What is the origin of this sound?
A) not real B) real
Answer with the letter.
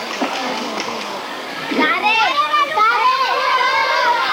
A